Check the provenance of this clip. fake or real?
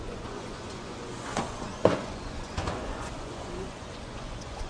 fake